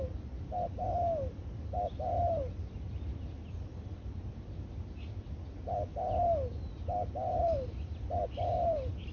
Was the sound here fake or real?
real